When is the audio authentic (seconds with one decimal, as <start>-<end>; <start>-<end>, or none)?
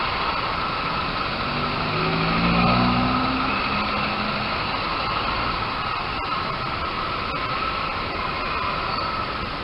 0.0-9.6